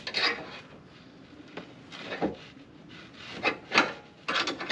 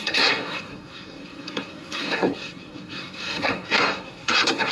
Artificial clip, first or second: second